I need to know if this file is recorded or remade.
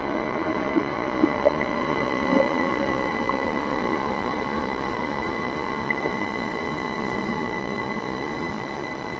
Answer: remade